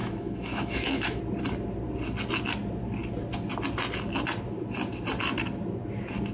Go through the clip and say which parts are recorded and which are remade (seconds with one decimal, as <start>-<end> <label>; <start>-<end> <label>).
0.0-1.2 remade; 1.2-6.3 recorded